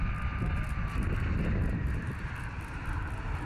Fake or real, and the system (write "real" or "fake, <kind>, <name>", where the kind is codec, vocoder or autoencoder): real